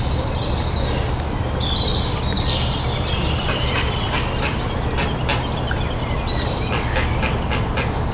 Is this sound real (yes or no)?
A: yes